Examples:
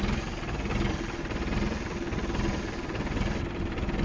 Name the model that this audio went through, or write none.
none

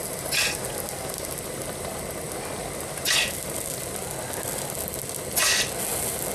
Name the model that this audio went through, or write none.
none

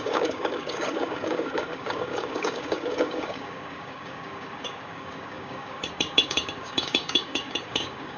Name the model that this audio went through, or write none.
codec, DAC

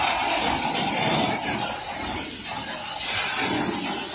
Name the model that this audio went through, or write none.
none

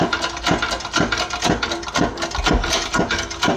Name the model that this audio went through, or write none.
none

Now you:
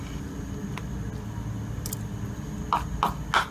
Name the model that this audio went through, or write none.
none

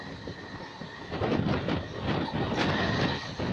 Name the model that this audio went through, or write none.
none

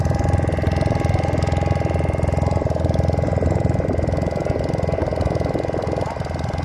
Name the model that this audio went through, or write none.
none